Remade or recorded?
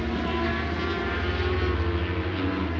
recorded